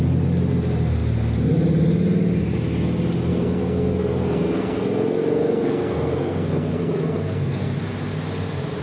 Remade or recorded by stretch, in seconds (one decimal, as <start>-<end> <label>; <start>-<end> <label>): 0.0-3.3 recorded; 3.3-7.8 remade; 7.8-8.8 recorded